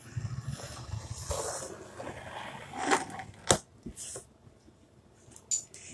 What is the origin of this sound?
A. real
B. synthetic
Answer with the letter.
A